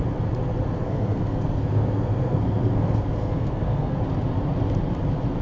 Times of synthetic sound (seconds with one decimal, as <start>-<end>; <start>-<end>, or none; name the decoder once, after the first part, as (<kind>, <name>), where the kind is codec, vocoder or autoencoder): 0.8-4.0 (codec, SNAC)